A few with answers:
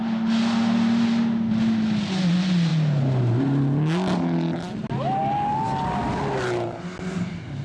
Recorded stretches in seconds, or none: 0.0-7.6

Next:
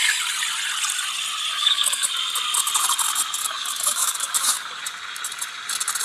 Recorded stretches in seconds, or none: 0.0-1.6; 2.1-3.4; 4.8-6.0

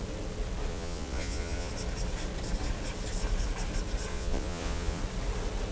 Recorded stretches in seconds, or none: 0.0-0.7; 1.7-4.1; 5.0-5.7

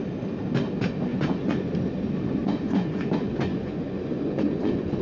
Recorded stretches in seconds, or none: 0.0-1.1; 1.7-2.4

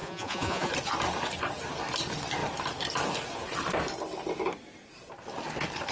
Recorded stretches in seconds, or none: 0.7-5.9